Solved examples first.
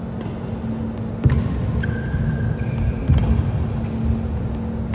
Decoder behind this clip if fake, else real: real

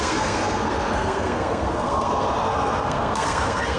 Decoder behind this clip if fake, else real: fake, codec, SNAC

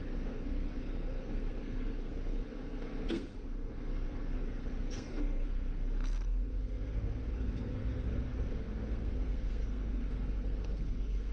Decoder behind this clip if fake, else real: fake, codec, SNAC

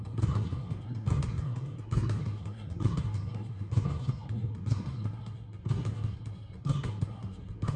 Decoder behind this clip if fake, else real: fake, codec, SNAC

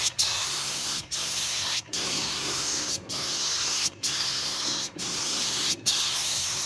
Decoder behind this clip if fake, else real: fake, codec, SNAC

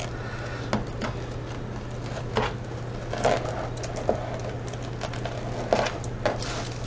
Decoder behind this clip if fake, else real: real